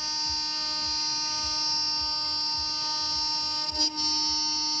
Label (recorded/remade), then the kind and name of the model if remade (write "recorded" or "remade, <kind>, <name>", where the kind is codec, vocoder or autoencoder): recorded